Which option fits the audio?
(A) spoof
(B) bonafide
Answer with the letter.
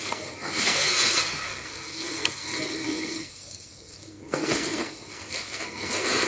A